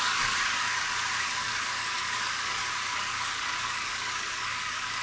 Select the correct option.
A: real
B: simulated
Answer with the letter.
B